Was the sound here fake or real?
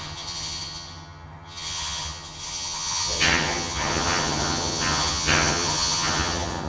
fake